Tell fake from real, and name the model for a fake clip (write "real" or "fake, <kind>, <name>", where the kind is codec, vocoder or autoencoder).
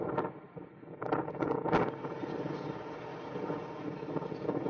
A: real